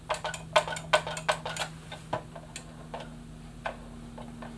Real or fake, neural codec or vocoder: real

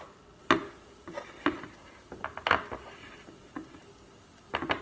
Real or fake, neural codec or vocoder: real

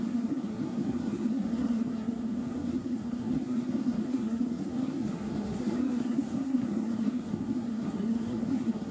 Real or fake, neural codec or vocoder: fake, codec, SNAC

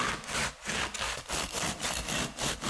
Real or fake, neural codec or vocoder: real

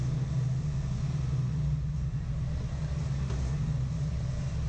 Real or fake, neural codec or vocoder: real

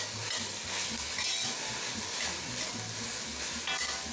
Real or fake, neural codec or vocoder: real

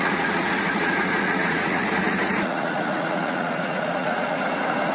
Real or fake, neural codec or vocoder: fake, vocoder, Vocos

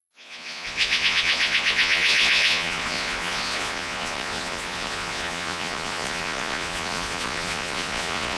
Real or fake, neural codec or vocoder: fake, vocoder, Vocos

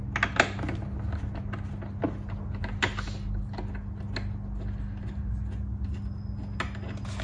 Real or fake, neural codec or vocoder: real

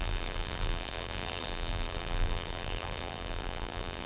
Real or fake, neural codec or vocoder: fake, vocoder, BigVGAN v2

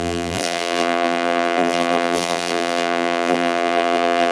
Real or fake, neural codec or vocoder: fake, vocoder, BigVGAN v2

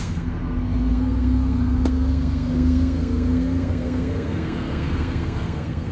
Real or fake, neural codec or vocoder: fake, codec, SNAC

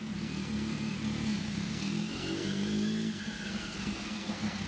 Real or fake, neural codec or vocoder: fake, codec, SNAC